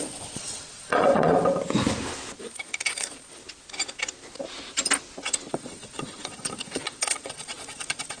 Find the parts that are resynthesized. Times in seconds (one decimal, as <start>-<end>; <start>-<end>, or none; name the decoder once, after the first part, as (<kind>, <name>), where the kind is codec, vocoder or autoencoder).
0.0-1.4 (vocoder, Vocos); 2.4-3.4; 5.5-8.2